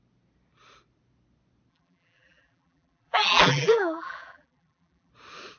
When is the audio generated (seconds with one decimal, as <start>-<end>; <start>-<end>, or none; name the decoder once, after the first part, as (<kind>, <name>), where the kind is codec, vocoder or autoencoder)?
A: 1.7-5.1 (vocoder, BigVGAN v2)